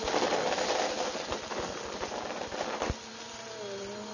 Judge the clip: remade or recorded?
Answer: recorded